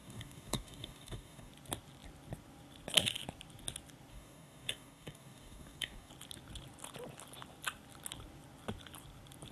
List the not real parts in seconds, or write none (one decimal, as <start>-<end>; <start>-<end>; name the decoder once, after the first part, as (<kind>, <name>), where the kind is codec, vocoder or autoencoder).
0.0-1.5 (codec, DAC); 4.1-6.1